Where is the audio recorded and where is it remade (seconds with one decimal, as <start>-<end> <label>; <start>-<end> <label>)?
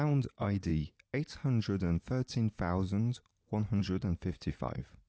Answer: 0.0-0.7 remade; 0.7-3.8 recorded; 3.8-5.1 remade